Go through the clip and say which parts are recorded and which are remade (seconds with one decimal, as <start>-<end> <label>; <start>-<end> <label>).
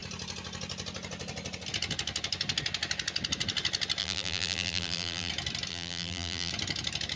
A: 0.0-4.0 recorded; 4.0-5.3 remade; 5.3-5.7 recorded; 5.7-6.5 remade; 6.5-7.2 recorded